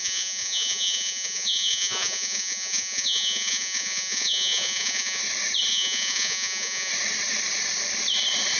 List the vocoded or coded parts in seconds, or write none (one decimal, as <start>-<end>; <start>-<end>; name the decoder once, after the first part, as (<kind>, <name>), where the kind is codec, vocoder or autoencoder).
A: 0.0-5.2 (vocoder, Vocos); 5.7-6.9